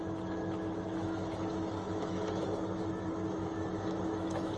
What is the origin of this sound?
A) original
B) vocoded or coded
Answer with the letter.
B